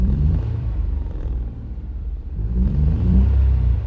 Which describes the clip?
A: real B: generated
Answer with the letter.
B